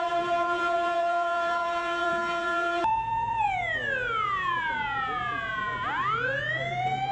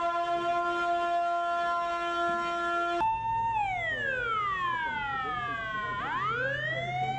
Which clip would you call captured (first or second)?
second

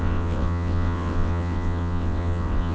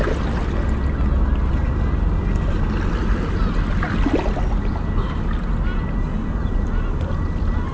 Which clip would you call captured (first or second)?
second